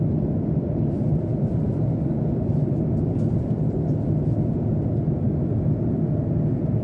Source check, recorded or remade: recorded